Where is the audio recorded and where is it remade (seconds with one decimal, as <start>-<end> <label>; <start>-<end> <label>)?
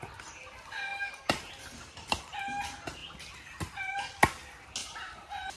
0.0-0.9 recorded; 0.9-1.9 remade; 1.9-4.8 recorded; 4.8-5.6 remade